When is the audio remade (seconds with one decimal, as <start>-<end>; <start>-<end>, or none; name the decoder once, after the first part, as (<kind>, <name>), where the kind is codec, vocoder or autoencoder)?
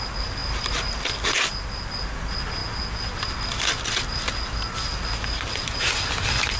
none